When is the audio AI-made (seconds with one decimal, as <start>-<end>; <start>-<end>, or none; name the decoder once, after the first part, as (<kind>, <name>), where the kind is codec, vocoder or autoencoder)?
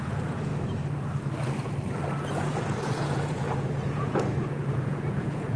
0.0-0.5 (vocoder, Vocos); 2.1-5.6